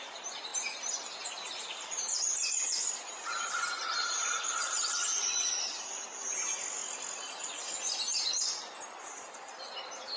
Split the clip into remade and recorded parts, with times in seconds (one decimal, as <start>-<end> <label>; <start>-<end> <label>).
0.0-6.8 remade; 6.8-9.2 recorded; 9.2-10.2 remade